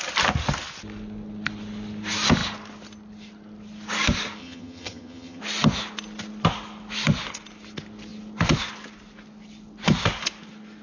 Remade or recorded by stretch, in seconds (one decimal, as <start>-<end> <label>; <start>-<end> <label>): 0.0-4.4 recorded; 4.4-5.4 remade; 5.4-10.8 recorded

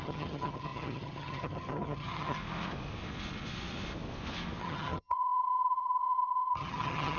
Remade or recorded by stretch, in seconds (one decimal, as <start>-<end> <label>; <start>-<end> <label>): 0.0-2.4 remade; 2.4-4.6 recorded; 4.6-7.2 remade

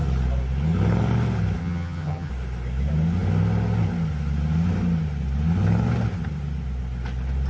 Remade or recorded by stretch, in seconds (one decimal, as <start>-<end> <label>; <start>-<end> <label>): 0.0-1.6 recorded; 1.6-2.3 remade; 2.3-7.5 recorded

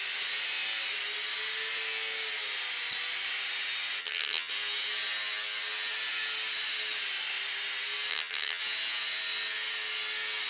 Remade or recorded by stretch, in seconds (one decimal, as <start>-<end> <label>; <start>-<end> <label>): 0.0-4.0 recorded; 4.0-4.5 remade; 4.5-8.1 recorded; 8.1-8.6 remade; 8.6-10.5 recorded

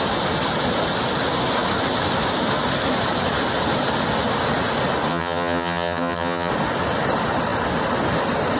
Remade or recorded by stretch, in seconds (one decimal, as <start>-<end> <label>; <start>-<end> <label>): 0.0-5.1 recorded; 5.1-6.5 remade; 6.5-8.6 recorded

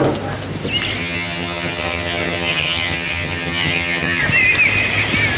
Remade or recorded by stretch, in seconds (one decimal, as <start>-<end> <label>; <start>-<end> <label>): 0.0-1.0 recorded; 1.0-4.2 remade; 4.2-5.4 recorded